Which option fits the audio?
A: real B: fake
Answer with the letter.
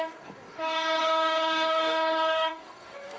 B